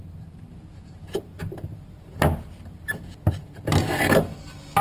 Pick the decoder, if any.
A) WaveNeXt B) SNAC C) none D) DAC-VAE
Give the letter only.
C